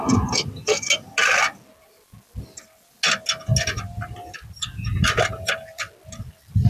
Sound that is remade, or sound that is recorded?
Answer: recorded